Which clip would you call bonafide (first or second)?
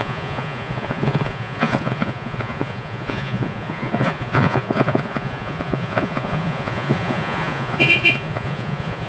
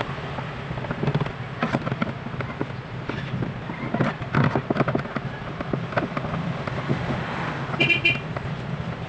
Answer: second